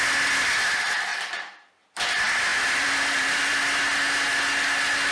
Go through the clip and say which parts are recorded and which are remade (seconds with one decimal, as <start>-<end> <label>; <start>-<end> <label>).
0.0-1.1 recorded; 1.1-1.7 remade; 1.7-2.5 recorded; 2.5-3.5 remade; 3.5-5.1 recorded